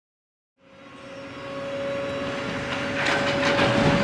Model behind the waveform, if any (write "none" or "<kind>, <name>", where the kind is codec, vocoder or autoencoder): none